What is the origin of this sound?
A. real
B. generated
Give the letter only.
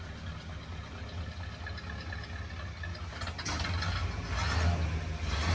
A